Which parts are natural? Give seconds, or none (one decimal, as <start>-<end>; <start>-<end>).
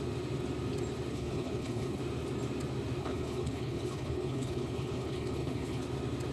0.0-1.1; 2.0-3.0; 5.8-6.3